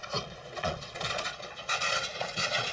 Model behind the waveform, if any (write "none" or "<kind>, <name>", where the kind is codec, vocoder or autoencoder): vocoder, Vocos